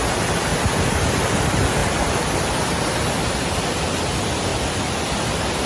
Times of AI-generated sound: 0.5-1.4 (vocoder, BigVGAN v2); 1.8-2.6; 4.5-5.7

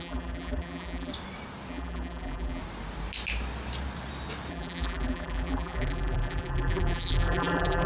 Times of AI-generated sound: 0.0-1.1 (vocoder, BigVGAN v2); 1.7-2.6; 4.5-7.9

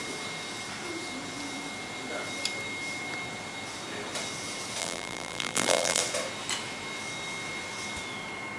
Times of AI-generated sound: 4.8-6.0 (vocoder, BigVGAN v2)

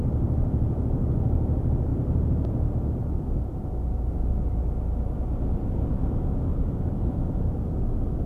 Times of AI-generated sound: 1.9-2.7 (vocoder, BigVGAN v2); 6.5-7.0

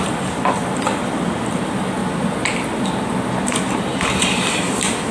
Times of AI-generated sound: 0.0-2.0 (vocoder, BigVGAN v2); 3.4-5.1

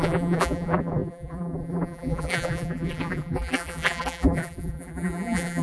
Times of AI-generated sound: 0.0-5.6 (vocoder, BigVGAN v2)

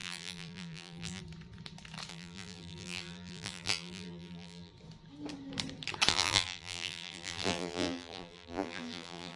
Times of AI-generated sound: 0.0-1.2 (vocoder, BigVGAN v2); 2.1-4.7; 6.1-9.4